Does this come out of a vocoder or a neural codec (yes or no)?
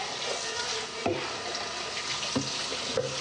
no